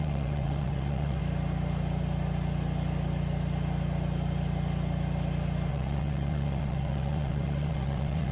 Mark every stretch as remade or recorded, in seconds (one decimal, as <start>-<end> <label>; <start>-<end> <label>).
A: 0.0-1.2 remade; 1.2-5.7 recorded; 5.7-8.3 remade